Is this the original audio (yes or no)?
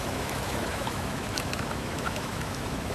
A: no